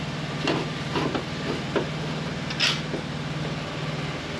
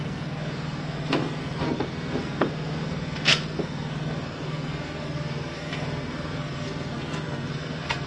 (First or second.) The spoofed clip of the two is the second